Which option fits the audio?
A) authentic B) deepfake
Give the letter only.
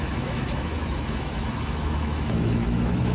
B